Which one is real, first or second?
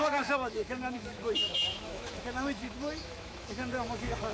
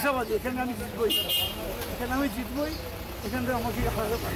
second